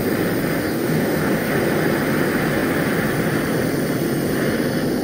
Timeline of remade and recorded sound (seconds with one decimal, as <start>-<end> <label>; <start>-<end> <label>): 0.0-0.6 recorded; 0.6-1.5 remade; 1.5-5.0 recorded